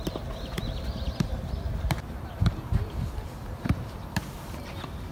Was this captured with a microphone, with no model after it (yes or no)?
no